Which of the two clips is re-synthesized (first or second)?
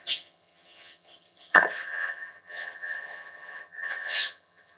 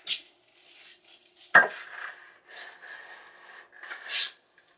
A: first